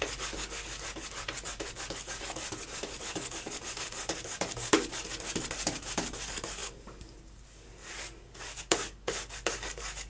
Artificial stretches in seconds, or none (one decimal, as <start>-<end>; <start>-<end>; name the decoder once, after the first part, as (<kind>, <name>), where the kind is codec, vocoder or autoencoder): 0.0-10.1 (codec, DAC)